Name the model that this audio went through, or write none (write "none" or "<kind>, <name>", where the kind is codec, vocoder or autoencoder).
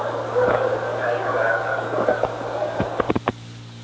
codec, DAC